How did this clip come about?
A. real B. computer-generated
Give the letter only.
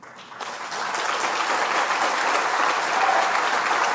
A